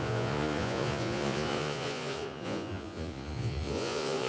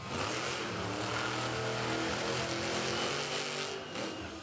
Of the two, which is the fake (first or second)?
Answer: first